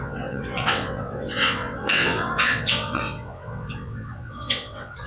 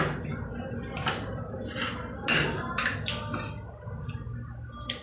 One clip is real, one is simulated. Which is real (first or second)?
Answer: second